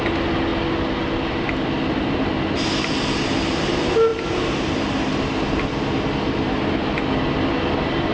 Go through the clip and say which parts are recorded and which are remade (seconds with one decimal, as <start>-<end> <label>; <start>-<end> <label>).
0.0-8.1 recorded